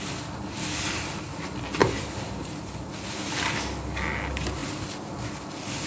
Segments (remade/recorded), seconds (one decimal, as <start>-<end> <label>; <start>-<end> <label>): 0.0-1.8 recorded; 1.8-2.9 remade; 2.9-5.9 recorded